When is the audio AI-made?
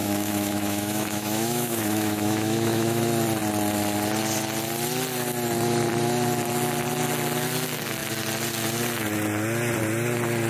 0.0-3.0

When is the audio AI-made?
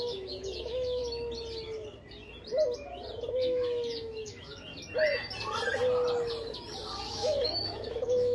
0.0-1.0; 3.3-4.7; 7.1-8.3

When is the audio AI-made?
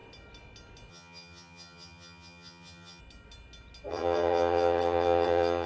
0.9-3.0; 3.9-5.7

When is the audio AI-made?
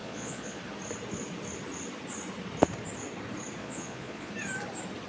0.0-0.6; 3.6-4.3